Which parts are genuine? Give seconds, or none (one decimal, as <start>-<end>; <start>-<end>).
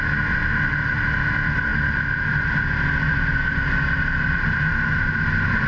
0.0-5.7